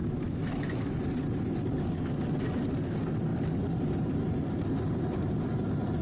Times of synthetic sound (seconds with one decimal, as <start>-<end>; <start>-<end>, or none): 0.0-1.0